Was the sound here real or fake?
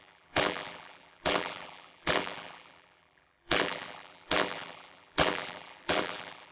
fake